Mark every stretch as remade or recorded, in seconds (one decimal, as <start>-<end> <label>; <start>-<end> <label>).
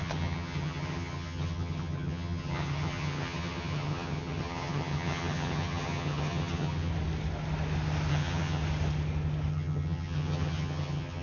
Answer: 0.0-6.9 remade; 6.9-8.1 recorded; 8.1-8.6 remade; 8.6-9.5 recorded; 9.5-11.2 remade